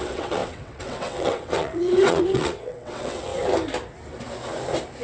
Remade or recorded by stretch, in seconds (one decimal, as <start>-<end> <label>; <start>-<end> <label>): 0.0-3.3 remade; 3.3-5.0 recorded